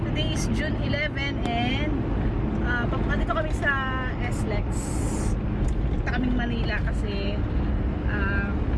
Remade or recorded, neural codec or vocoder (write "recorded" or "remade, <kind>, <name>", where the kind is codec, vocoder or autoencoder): recorded